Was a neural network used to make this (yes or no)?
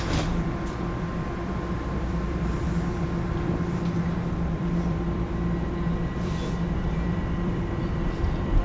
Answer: yes